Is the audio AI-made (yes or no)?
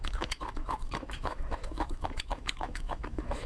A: yes